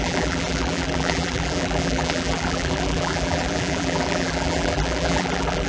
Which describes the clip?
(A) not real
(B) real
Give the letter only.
A